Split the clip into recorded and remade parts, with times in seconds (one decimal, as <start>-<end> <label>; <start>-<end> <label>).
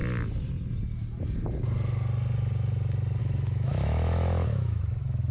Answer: 0.0-3.2 recorded; 3.2-5.3 remade